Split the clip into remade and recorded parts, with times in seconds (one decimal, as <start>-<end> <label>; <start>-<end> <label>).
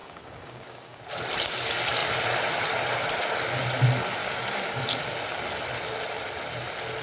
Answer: 0.0-1.0 remade; 1.0-4.2 recorded; 4.2-4.8 remade; 4.8-7.0 recorded